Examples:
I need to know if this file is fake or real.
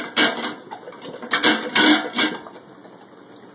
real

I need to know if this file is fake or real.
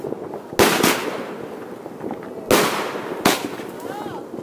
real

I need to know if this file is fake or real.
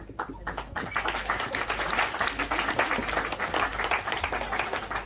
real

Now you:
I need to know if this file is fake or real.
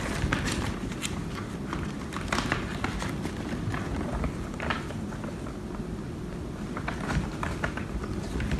real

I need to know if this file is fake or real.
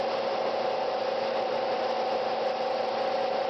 real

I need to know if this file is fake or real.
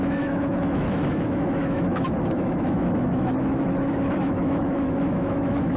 fake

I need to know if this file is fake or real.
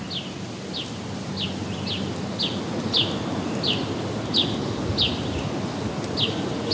real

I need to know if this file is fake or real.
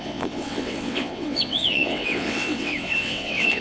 fake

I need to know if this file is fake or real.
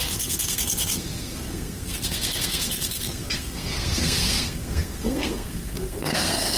fake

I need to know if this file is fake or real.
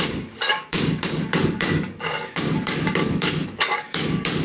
fake